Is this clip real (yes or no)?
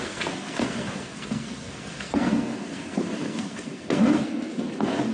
no